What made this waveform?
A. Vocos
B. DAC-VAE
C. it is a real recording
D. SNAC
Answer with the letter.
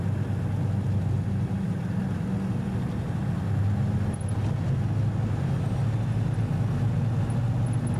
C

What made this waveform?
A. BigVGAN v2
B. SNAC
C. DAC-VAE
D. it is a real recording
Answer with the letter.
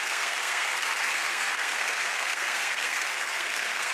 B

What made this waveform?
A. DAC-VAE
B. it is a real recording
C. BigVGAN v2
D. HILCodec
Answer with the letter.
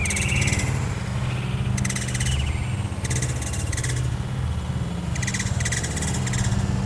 B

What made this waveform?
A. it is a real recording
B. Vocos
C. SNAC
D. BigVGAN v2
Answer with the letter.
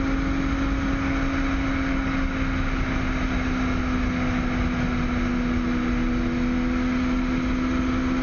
A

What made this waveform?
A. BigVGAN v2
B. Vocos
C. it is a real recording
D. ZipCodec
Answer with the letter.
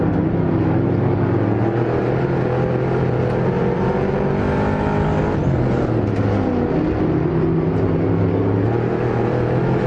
C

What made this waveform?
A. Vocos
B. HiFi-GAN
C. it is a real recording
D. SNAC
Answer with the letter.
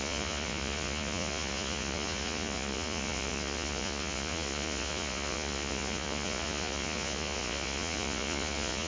A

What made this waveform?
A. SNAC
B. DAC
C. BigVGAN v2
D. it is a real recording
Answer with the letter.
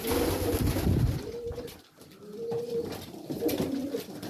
D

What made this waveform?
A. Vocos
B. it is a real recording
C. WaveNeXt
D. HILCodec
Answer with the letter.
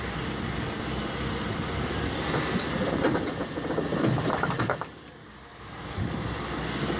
B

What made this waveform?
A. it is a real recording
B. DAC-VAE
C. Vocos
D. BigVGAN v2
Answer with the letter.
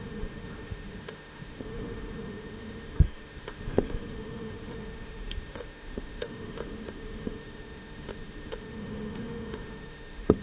B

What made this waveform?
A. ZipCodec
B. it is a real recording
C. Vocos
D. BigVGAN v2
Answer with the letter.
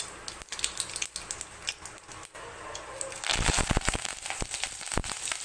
B